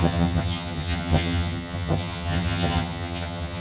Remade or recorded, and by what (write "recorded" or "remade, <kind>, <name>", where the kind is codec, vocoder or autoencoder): remade, vocoder, HiFi-GAN